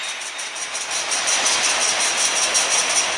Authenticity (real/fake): real